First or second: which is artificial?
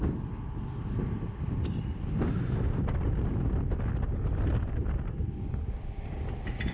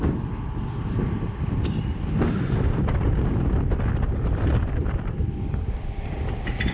second